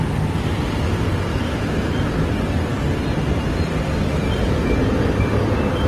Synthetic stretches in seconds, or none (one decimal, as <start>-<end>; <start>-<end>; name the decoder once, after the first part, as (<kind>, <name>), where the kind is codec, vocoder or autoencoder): 1.3-1.9 (autoencoder, DAC-VAE)